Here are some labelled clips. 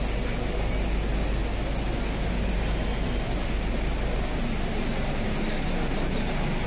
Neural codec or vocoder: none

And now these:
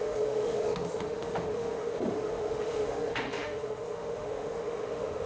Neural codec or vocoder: autoencoder, DAC-VAE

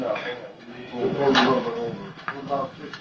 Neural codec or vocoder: autoencoder, DAC-VAE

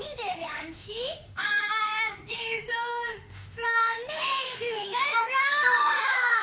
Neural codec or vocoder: autoencoder, DAC-VAE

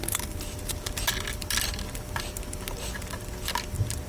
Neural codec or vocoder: none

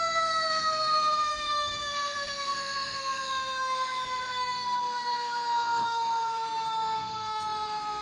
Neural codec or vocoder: autoencoder, DAC-VAE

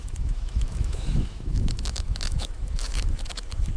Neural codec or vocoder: autoencoder, DAC-VAE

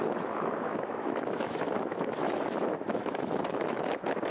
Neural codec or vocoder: autoencoder, DAC-VAE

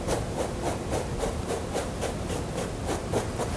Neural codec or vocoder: none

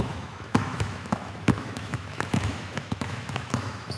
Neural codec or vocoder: autoencoder, DAC-VAE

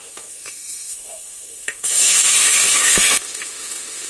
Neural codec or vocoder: autoencoder, DAC-VAE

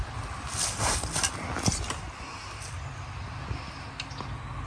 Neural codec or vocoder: none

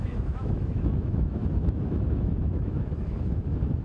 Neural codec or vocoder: autoencoder, DAC-VAE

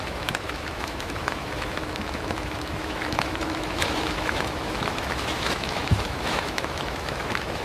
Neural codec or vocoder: autoencoder, DAC-VAE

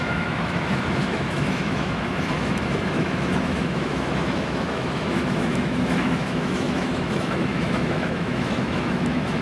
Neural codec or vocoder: autoencoder, DAC-VAE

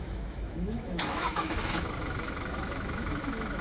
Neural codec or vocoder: autoencoder, DAC-VAE